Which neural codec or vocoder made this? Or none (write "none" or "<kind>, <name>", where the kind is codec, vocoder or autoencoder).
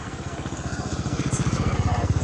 codec, SNAC